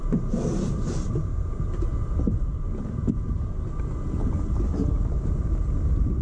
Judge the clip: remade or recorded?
remade